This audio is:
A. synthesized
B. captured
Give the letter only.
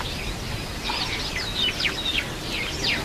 B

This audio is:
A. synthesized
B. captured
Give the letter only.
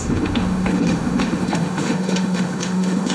A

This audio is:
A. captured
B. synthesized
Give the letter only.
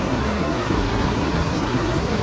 B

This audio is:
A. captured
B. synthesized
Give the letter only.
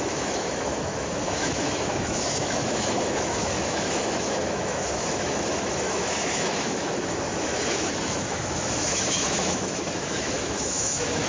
B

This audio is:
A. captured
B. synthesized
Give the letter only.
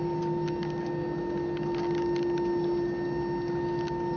A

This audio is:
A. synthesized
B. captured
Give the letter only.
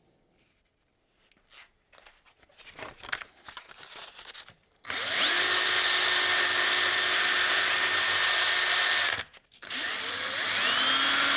B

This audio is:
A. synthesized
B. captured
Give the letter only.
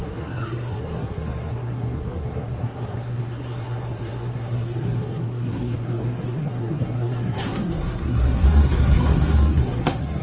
A